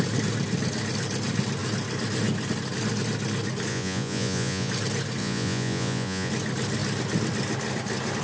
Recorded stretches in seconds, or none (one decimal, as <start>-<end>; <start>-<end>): 0.0-3.7; 4.7-5.2; 6.3-8.2

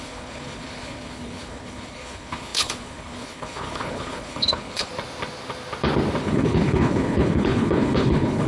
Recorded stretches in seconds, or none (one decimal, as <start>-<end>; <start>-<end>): 4.9-6.2

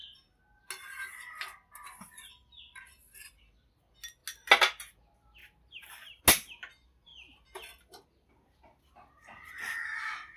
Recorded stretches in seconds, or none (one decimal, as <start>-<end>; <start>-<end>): 0.0-5.4; 6.2-10.4

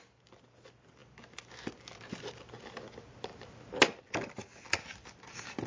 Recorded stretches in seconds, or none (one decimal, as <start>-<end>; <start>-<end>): 0.0-5.7